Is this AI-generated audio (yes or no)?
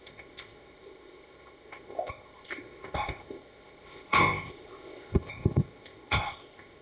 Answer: yes